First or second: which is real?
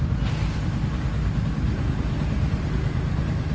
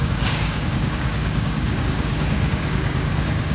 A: first